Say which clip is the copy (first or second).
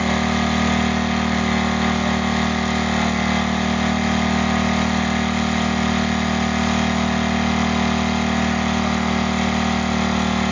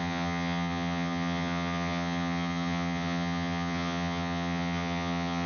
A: second